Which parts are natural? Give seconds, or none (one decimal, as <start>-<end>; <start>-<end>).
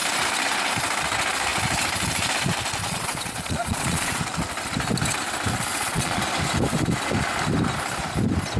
0.0-2.8; 4.2-5.7; 6.2-8.6